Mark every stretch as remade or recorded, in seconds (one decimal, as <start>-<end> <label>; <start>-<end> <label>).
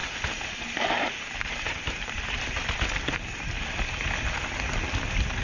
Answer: 0.0-2.2 remade; 2.2-5.4 recorded